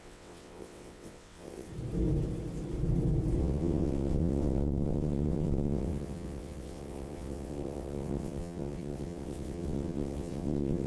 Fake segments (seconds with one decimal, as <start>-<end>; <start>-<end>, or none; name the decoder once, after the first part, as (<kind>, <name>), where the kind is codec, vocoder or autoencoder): 0.0-1.7 (vocoder, WaveNeXt); 3.4-10.9